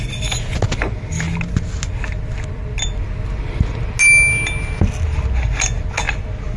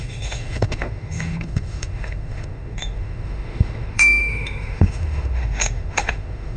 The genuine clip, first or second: first